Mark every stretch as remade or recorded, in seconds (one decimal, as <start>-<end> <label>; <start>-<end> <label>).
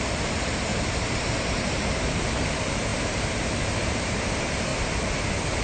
0.0-0.7 remade; 0.7-1.5 recorded; 1.5-2.9 remade; 2.9-3.4 recorded; 3.4-4.7 remade; 4.7-5.6 recorded